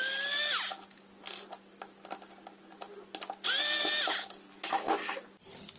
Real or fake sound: real